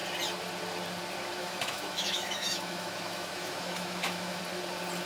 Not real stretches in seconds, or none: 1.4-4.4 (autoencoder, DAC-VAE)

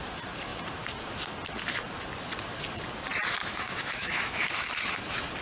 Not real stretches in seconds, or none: 3.4-4.7 (autoencoder, DAC-VAE)

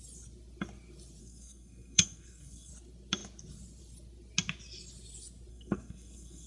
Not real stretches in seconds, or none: 1.2-2.7 (codec, SNAC); 5.5-6.5

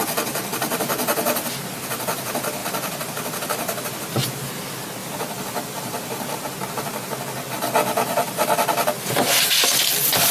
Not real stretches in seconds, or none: 5.0-6.4 (vocoder, BigVGAN v2)

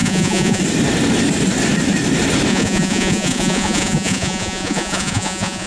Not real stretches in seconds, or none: 0.0-0.6 (vocoder, Vocos); 2.5-5.7

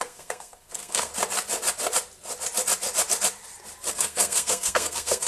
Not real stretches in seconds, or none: 0.0-1.1 (codec, SNAC); 3.9-5.3

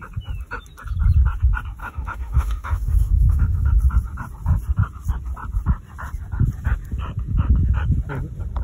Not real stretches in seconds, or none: 1.8-3.8 (autoencoder, DAC-VAE)